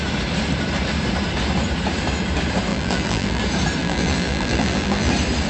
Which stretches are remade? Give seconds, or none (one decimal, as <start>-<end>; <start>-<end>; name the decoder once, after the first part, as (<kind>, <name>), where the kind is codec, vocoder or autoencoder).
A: 2.7-3.4 (vocoder, BigVGAN v2); 3.8-5.1